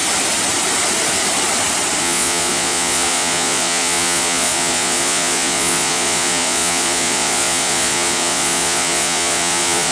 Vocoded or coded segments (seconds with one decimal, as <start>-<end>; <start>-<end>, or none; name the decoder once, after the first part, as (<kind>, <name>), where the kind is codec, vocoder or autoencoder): 2.0-9.9 (vocoder, Vocos)